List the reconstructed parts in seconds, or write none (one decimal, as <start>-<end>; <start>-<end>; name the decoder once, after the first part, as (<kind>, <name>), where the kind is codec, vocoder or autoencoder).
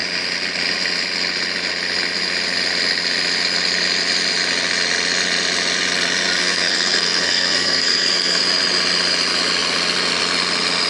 6.4-8.4 (codec, SNAC)